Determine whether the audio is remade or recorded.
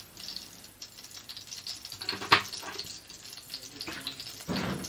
recorded